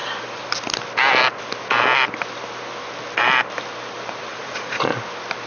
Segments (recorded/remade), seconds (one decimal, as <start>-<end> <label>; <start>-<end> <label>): 0.0-4.3 recorded; 4.3-4.9 remade; 4.9-5.5 recorded